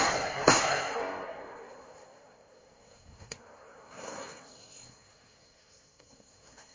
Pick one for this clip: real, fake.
fake